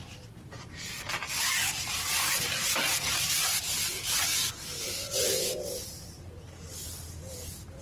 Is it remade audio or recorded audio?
recorded